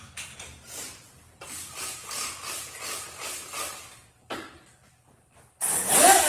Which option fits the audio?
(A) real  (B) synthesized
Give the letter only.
A